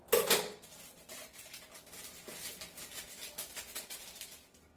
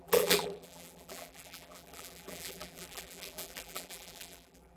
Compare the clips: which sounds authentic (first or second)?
first